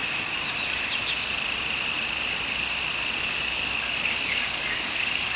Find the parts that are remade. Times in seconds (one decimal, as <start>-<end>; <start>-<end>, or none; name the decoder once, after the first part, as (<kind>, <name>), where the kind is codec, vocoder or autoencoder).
3.2-5.4 (codec, DAC)